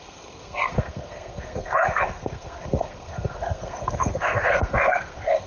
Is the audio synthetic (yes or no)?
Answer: yes